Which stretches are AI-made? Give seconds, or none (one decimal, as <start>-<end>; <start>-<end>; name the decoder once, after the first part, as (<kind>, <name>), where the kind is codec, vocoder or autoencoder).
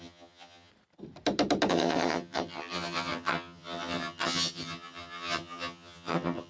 0.0-0.7 (vocoder, HiFi-GAN); 1.7-6.5